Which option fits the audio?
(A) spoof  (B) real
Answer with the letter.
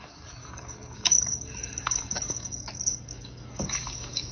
A